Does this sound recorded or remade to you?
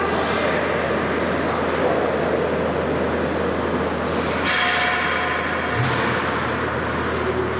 recorded